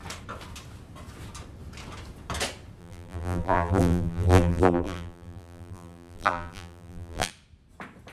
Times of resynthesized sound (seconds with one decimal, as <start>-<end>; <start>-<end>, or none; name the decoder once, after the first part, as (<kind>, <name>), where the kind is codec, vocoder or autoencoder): 2.8-7.3 (vocoder, BigVGAN v2)

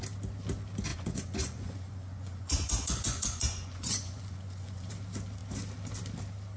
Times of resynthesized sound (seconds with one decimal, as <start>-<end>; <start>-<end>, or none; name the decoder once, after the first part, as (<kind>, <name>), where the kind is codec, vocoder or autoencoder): 0.9-4.9 (vocoder, Vocos)

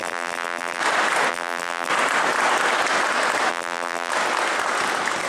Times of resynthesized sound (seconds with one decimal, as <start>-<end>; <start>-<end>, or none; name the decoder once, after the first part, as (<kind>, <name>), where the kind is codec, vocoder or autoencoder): 0.0-0.8 (vocoder, BigVGAN v2); 1.3-1.9; 3.5-4.1

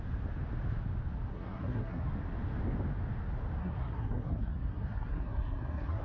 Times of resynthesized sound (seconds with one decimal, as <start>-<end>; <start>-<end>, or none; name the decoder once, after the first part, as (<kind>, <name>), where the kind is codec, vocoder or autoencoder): 1.3-2.1 (codec, SNAC); 3.6-6.0

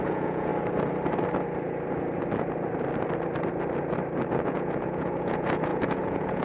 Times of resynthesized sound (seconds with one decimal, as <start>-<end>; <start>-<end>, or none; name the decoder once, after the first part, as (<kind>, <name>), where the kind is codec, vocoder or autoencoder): 0.0-0.5 (vocoder, Vocos); 4.3-6.4

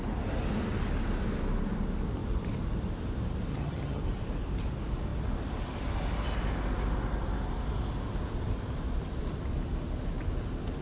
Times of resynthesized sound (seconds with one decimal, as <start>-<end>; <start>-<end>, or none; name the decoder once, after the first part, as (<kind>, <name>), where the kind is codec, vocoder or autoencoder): 3.5-4.0 (vocoder, HiFi-GAN)